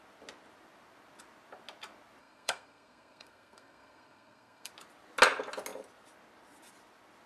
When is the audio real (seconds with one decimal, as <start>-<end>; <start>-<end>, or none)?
0.0-2.2; 4.7-7.3